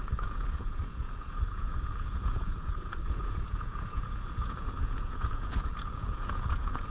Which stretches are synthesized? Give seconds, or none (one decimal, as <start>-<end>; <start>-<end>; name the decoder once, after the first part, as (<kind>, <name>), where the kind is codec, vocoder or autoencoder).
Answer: 0.0-6.9 (vocoder, Vocos)

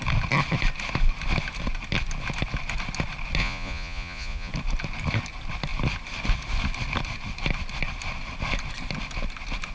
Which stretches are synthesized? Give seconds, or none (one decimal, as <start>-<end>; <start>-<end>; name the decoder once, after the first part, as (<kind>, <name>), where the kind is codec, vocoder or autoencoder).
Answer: 3.4-4.5 (vocoder, Vocos)